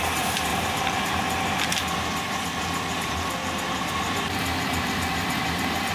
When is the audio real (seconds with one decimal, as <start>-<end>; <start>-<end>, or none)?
0.0-0.5; 1.2-5.9